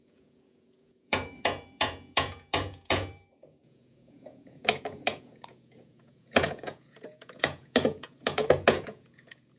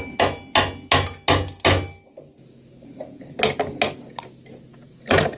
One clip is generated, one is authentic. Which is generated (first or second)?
first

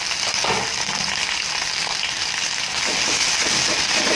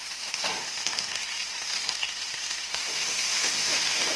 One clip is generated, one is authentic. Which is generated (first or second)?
second